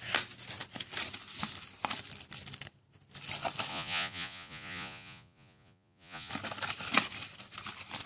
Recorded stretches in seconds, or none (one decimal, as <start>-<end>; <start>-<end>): 0.0-3.7; 6.3-8.1